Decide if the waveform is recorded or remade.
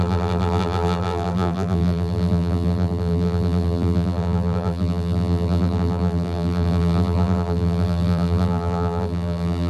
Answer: remade